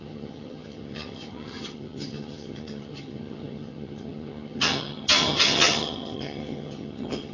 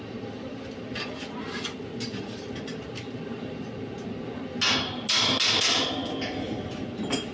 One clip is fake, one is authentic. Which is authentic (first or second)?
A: second